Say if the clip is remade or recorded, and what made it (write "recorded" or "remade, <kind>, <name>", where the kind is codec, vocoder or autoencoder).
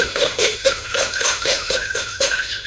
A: remade, autoencoder, DAC-VAE